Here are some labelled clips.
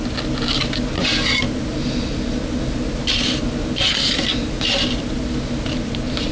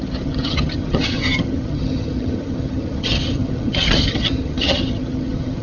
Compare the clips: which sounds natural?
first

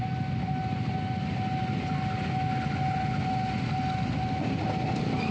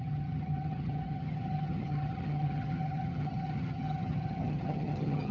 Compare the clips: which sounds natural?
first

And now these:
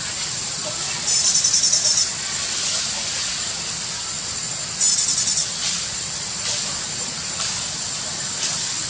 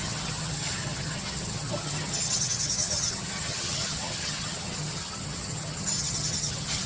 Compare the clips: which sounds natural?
first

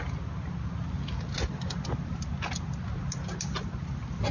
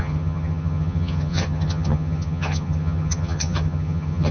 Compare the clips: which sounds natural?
first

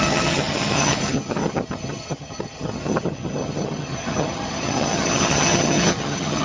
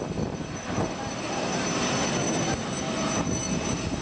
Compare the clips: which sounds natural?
second